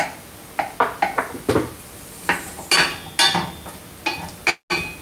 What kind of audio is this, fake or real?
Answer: real